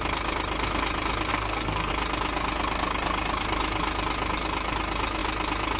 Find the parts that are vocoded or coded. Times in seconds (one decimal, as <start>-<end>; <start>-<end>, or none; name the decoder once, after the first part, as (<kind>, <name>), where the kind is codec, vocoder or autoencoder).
1.3-1.9 (codec, SNAC)